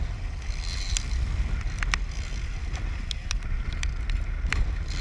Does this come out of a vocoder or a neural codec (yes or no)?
no